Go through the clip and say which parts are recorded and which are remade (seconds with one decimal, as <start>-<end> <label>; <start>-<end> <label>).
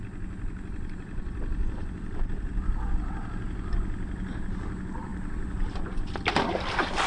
0.0-7.1 recorded